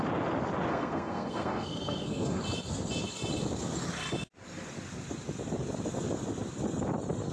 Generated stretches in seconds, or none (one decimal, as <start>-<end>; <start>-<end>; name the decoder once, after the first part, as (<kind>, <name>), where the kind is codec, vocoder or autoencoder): 0.7-2.4 (codec, SNAC)